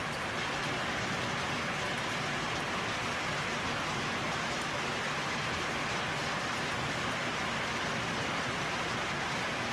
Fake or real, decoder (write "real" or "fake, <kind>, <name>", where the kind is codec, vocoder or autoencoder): real